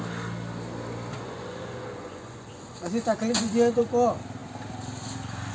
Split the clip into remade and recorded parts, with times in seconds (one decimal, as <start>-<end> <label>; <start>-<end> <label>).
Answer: 0.0-1.1 recorded; 1.1-3.8 remade; 3.8-5.5 recorded